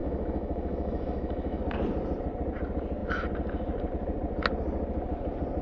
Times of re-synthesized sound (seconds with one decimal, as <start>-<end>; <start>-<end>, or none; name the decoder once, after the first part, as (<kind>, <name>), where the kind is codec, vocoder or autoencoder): 0.0-1.6 (autoencoder, DAC-VAE)